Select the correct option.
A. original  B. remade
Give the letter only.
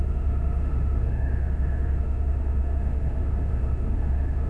B